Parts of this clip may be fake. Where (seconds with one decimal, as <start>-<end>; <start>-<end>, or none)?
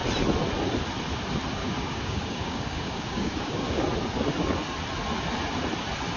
1.6-3.8